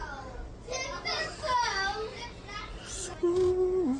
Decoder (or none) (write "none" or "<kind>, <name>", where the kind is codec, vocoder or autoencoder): none